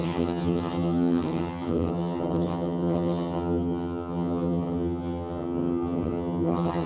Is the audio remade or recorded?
remade